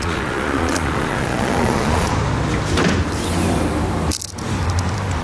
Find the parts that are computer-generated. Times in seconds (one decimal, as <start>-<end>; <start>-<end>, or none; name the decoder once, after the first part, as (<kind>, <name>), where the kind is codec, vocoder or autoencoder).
0.0-2.1 (vocoder, Vocos)